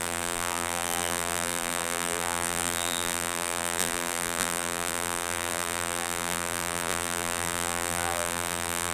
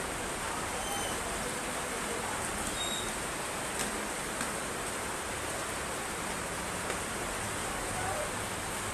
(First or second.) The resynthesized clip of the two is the first